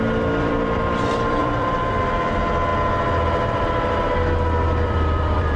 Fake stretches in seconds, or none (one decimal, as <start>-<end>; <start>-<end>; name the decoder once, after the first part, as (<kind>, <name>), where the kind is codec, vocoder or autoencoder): 0.0-2.7 (vocoder, BigVGAN v2); 4.8-5.6